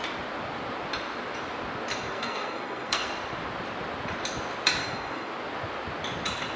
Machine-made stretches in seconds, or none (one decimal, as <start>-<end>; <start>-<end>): 2.1-3.1; 4.8-5.3